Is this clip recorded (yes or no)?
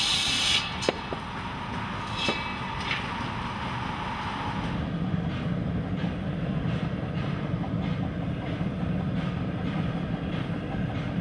yes